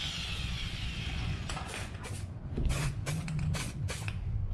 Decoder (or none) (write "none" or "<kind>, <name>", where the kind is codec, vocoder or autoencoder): vocoder, Vocos